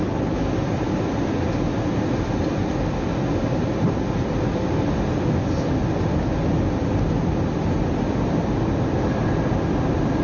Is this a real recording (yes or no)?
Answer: yes